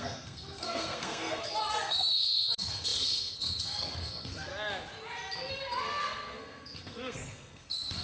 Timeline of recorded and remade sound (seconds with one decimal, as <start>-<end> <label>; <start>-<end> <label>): 0.0-4.5 remade; 4.5-5.5 recorded; 5.5-8.0 remade